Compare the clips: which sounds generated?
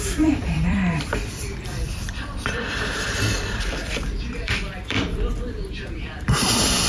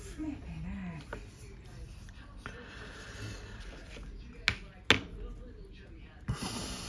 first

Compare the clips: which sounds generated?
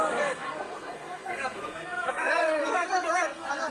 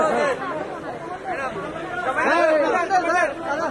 first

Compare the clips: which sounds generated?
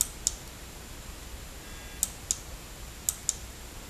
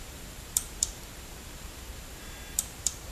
second